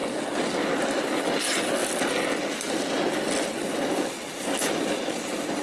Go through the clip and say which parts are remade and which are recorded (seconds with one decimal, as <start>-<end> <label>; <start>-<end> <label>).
0.0-5.6 recorded